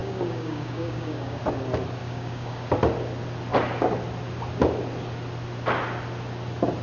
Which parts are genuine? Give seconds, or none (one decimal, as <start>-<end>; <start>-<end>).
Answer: 1.4-2.0; 2.7-6.8